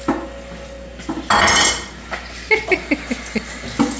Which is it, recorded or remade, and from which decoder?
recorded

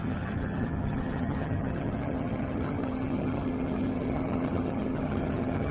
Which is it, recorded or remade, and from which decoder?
remade, vocoder, HiFi-GAN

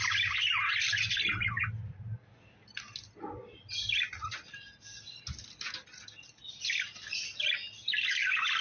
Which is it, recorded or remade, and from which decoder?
recorded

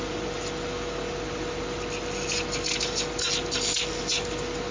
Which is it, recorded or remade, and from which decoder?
recorded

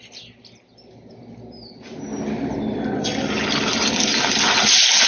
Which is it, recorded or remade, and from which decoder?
recorded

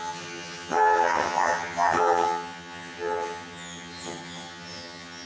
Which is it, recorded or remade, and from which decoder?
remade, vocoder, HiFi-GAN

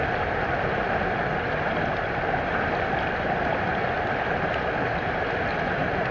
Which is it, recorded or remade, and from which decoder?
recorded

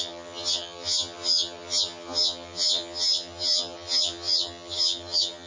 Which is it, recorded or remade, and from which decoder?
remade, vocoder, HiFi-GAN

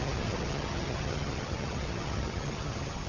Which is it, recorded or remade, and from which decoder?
remade, vocoder, HiFi-GAN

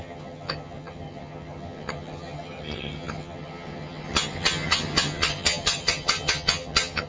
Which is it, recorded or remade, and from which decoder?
remade, vocoder, HiFi-GAN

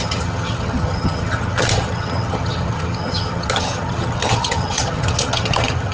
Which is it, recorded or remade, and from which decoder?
remade, vocoder, HiFi-GAN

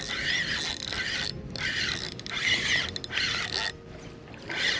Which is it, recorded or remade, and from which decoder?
recorded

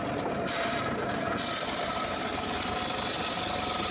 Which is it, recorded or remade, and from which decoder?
recorded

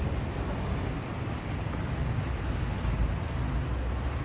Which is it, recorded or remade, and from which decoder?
recorded